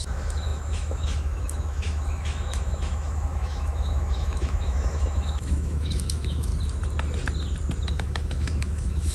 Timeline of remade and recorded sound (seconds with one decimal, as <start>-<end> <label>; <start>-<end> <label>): 0.0-6.5 remade; 6.5-7.9 recorded; 7.9-9.1 remade